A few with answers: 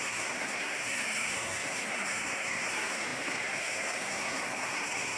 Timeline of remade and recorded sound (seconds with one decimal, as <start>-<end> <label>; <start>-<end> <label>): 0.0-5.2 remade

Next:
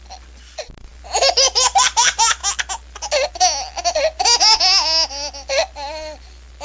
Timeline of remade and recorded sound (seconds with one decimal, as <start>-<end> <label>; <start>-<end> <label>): 0.0-6.6 recorded

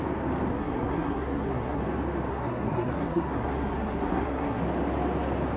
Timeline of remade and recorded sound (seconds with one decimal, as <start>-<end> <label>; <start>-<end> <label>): 0.0-0.5 recorded; 0.5-1.8 remade; 1.8-2.3 recorded; 2.3-4.6 remade; 4.6-5.6 recorded

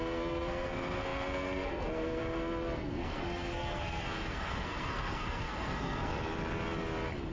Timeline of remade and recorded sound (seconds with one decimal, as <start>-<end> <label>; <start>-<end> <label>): 0.0-6.1 remade; 6.1-7.3 recorded

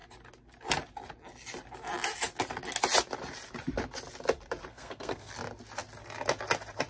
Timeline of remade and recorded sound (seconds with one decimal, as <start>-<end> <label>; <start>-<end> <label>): 0.0-4.7 recorded; 4.7-5.3 remade; 5.3-6.9 recorded